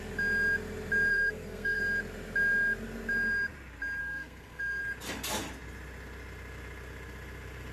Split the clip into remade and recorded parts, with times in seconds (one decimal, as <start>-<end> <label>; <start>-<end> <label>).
0.0-1.1 recorded; 1.1-1.8 remade; 1.8-4.0 recorded; 4.0-4.8 remade; 4.8-7.7 recorded